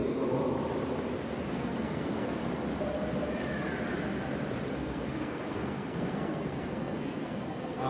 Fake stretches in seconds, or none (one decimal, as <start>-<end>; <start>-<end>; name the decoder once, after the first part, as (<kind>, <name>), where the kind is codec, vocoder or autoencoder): 1.5-2.4 (codec, SNAC); 4.7-7.9